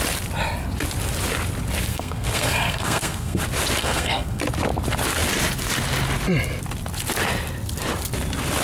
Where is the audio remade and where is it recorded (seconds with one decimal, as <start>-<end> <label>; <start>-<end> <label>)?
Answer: 0.0-1.9 recorded; 1.9-3.4 remade; 3.4-3.8 recorded; 3.8-4.4 remade; 4.4-8.6 recorded